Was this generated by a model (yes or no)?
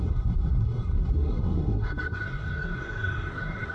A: yes